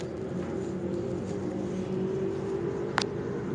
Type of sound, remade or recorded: recorded